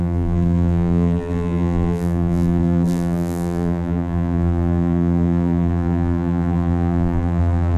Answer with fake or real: fake